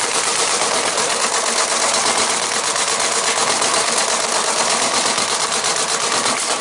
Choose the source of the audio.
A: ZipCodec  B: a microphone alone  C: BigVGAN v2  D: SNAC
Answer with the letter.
B